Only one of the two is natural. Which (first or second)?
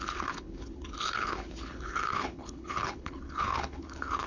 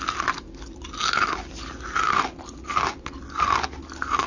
second